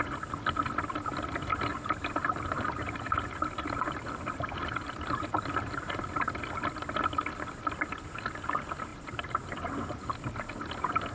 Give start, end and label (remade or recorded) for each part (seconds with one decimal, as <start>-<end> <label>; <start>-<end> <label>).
0.0-1.7 recorded; 1.7-6.0 remade; 6.0-8.9 recorded; 8.9-9.5 remade; 9.5-11.1 recorded